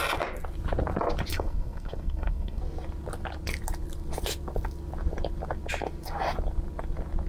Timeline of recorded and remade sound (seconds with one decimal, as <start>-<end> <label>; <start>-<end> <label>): 0.0-1.3 recorded; 1.3-2.6 remade; 2.6-7.3 recorded